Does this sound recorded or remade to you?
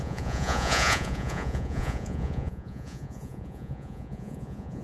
remade